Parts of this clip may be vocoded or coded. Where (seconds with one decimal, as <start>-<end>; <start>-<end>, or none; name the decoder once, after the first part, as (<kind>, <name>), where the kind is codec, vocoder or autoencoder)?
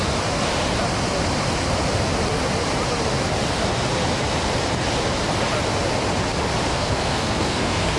6.7-8.0 (codec, SNAC)